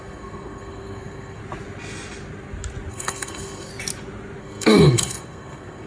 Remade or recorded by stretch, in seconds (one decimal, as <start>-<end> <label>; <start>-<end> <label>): 0.0-1.4 remade; 1.4-2.9 recorded; 2.9-3.7 remade; 3.7-4.4 recorded; 4.4-5.9 remade